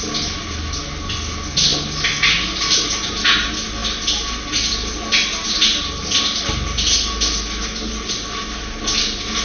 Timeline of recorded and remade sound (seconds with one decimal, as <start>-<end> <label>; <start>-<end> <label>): 0.0-9.4 recorded